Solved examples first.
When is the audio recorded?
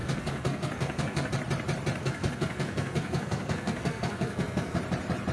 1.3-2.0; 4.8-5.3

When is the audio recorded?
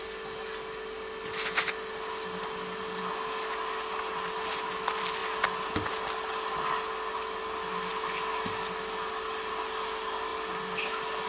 0.0-11.3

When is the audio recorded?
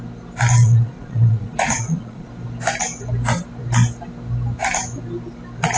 0.0-0.6; 2.3-5.8